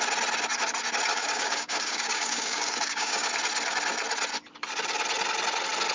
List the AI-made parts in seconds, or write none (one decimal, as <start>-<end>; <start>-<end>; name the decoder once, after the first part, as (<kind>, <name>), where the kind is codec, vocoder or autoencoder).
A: 1.1-3.3 (codec, DAC)